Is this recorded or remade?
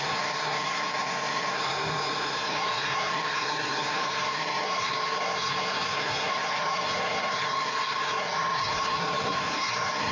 remade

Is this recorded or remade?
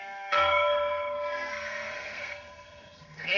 remade